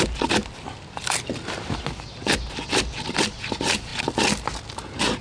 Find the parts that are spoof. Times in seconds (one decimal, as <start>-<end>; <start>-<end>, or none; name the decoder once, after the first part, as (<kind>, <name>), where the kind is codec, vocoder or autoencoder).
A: none